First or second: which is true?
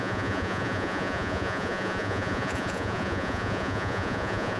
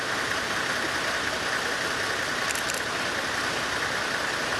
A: second